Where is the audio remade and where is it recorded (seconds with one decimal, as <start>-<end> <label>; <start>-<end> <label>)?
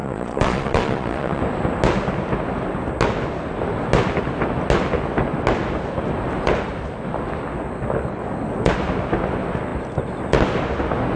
0.0-1.4 remade; 1.4-11.2 recorded